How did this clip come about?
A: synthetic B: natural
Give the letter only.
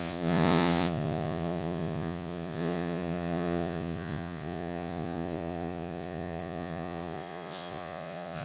A